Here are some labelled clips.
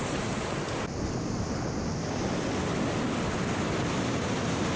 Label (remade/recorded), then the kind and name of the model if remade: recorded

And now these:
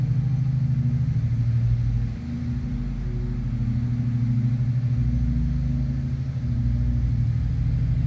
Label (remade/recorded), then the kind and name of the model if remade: recorded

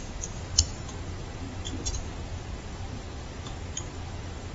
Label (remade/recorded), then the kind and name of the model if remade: remade, vocoder, BigVGAN v2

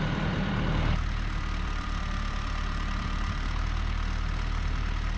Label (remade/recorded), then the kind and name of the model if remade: remade, vocoder, BigVGAN v2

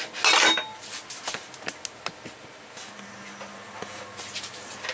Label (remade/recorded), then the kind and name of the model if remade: recorded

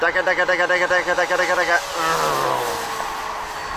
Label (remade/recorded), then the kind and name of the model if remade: recorded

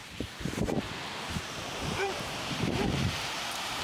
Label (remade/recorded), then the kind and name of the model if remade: remade, vocoder, BigVGAN v2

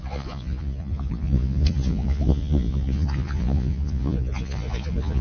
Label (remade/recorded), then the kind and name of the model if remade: remade, vocoder, Vocos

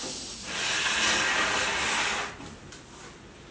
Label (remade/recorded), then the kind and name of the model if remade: recorded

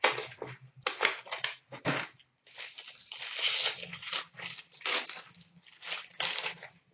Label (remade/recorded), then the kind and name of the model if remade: recorded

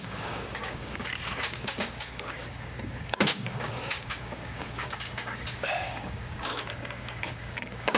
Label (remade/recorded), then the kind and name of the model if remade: remade, codec, DAC